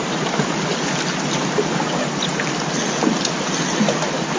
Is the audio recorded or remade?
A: recorded